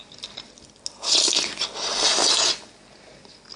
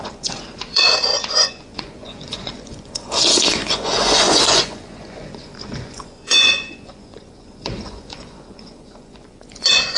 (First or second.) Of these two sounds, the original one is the first